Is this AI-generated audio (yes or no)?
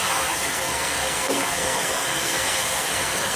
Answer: yes